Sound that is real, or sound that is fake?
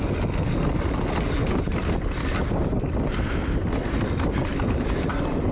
real